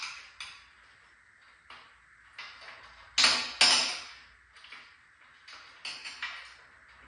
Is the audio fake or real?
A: real